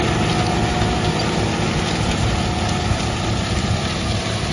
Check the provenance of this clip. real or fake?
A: real